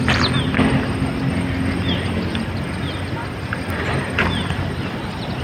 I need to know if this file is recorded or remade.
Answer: recorded